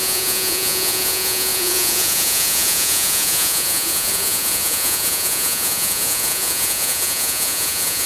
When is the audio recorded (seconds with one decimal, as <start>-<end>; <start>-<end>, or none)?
none